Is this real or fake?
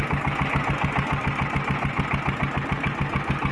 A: real